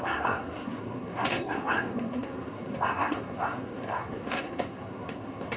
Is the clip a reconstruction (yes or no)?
yes